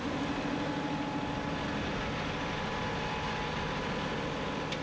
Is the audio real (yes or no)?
yes